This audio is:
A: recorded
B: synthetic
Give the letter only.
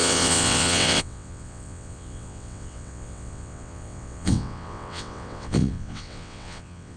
B